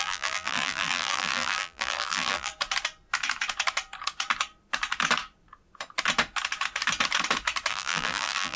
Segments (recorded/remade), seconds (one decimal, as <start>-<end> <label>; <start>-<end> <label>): 0.0-2.5 remade; 2.5-7.7 recorded; 7.7-8.6 remade